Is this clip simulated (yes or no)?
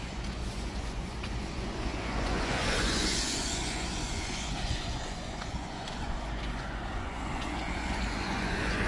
yes